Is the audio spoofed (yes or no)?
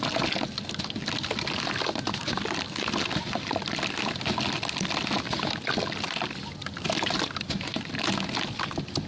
no